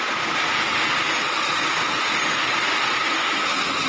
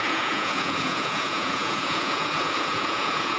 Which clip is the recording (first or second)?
first